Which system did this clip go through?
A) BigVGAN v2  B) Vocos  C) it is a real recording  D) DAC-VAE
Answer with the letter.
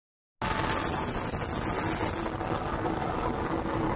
C